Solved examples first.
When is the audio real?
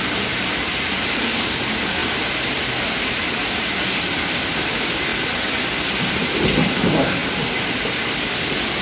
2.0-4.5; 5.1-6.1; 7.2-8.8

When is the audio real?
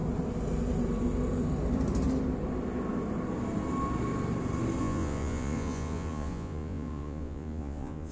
0.0-4.8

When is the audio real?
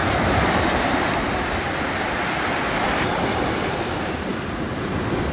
0.0-5.3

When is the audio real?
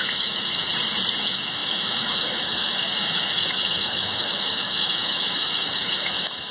0.7-1.2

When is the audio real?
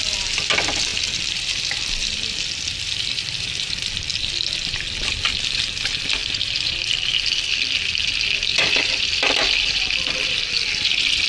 0.0-0.9; 1.6-2.0; 4.2-6.2; 8.0-8.5; 10.9-11.3